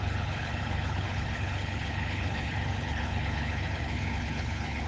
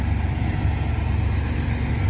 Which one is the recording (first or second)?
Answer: second